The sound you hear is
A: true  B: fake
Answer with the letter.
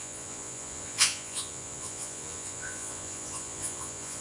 B